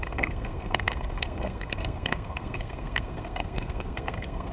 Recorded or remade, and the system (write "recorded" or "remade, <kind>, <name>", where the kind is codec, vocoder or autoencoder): remade, codec, SNAC